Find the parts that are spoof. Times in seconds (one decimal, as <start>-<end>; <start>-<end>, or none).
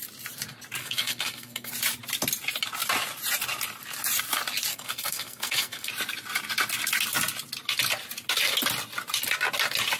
0.8-1.7; 4.7-5.9